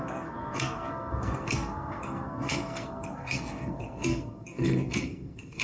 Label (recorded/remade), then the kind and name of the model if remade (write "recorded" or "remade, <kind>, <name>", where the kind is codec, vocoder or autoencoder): remade, codec, SNAC